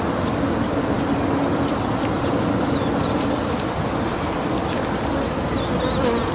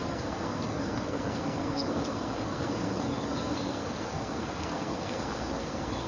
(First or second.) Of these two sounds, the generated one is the second